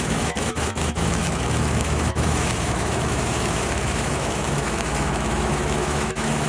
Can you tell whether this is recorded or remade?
remade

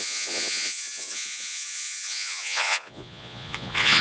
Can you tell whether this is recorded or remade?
remade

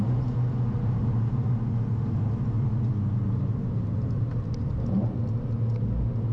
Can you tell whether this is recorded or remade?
recorded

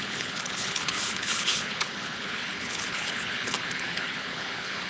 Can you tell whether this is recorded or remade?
remade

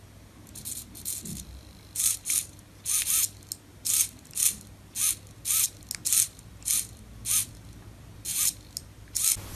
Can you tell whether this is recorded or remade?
recorded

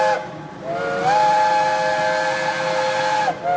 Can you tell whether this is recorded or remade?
recorded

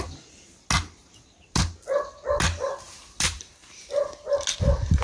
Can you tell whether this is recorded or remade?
recorded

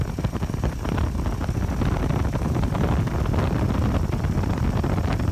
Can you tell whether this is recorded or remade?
recorded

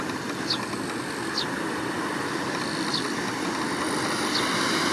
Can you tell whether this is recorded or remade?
recorded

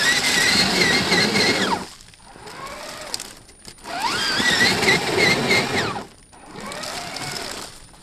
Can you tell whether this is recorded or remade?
recorded